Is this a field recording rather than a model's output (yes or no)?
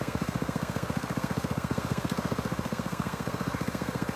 no